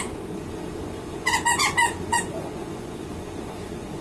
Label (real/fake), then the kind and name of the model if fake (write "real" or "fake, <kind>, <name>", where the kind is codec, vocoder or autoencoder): fake, vocoder, Vocos